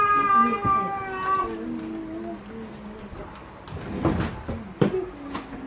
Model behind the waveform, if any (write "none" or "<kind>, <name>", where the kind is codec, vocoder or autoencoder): none